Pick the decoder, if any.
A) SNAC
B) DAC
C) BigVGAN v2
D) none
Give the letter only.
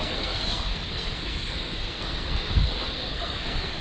A